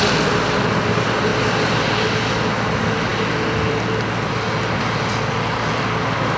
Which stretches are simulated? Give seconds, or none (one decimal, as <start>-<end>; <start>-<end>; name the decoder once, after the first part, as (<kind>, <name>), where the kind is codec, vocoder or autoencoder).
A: none